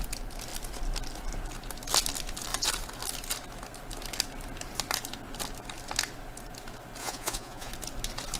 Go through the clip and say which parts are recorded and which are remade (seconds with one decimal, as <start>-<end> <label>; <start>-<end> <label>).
0.0-7.0 recorded; 7.0-7.7 remade; 7.7-8.4 recorded